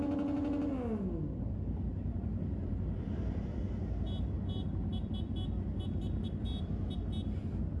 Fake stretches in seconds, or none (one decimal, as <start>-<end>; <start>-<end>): 1.9-4.9; 6.4-6.9